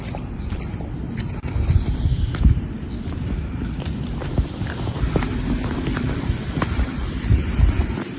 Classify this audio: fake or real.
fake